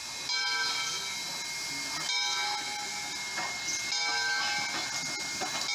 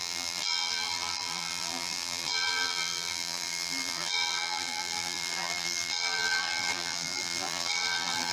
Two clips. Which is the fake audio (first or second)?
second